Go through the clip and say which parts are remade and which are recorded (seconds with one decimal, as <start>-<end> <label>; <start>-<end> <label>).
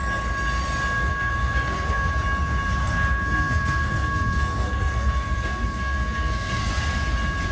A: 0.0-1.1 recorded; 1.1-2.1 remade; 2.1-2.8 recorded; 2.8-6.7 remade; 6.7-7.5 recorded